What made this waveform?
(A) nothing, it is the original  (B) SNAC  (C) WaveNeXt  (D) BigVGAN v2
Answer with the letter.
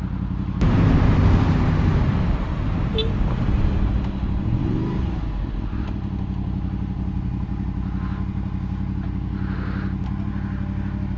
A